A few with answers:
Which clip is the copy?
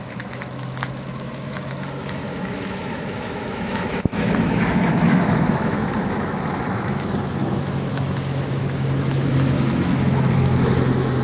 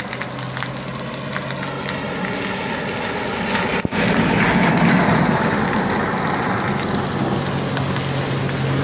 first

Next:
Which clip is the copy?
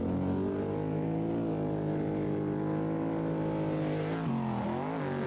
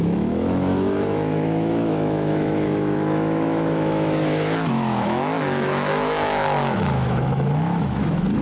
second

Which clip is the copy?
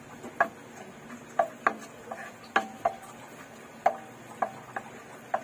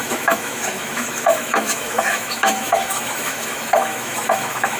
second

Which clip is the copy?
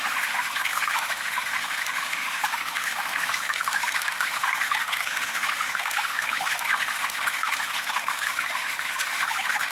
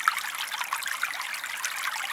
first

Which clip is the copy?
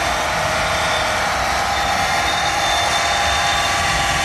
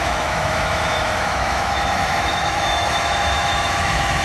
second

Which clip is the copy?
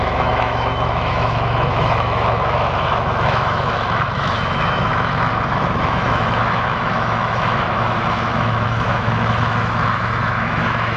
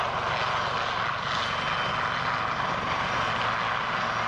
first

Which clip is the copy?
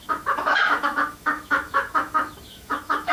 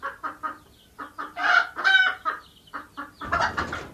first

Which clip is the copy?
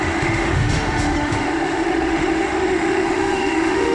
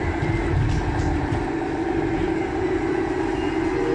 first